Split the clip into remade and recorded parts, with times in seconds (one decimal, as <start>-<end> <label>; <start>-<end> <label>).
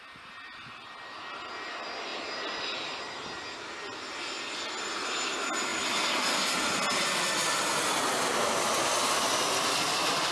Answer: 0.0-10.3 recorded